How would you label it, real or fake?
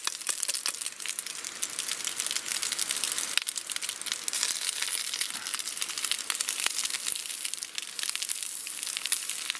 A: real